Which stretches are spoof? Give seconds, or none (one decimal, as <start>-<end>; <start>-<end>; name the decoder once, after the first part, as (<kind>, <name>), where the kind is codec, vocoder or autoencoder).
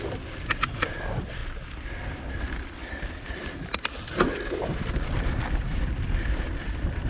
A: none